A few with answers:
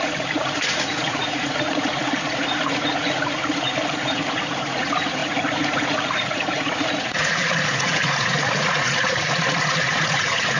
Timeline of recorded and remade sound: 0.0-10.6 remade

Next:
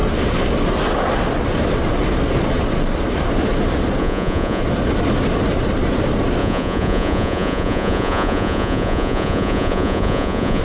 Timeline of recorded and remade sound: 0.0-4.0 recorded; 4.0-4.6 remade; 4.6-6.4 recorded; 6.4-10.6 remade

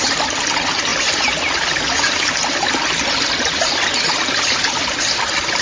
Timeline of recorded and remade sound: 0.0-5.6 recorded

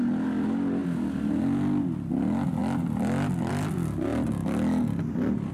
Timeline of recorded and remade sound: 0.0-5.5 recorded

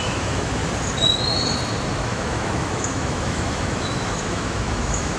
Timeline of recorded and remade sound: 0.0-0.6 remade; 0.6-2.0 recorded; 2.0-5.2 remade

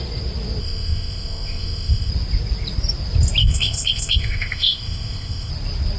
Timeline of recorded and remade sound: 0.0-0.6 recorded; 0.6-2.1 remade; 2.1-3.4 recorded; 3.4-5.5 remade; 5.5-6.0 recorded

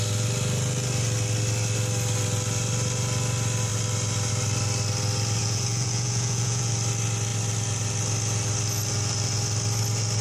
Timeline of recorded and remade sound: 0.0-5.4 recorded; 5.4-6.7 remade; 6.7-10.2 recorded

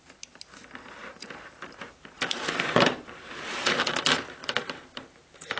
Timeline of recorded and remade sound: 0.0-1.0 recorded; 1.0-4.0 remade; 4.0-4.4 recorded; 4.4-5.6 remade